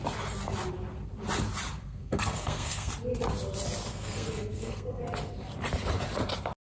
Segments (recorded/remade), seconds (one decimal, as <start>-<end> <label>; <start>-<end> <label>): 0.0-1.8 recorded; 1.8-2.9 remade; 2.9-3.9 recorded; 3.9-5.0 remade; 5.0-6.7 recorded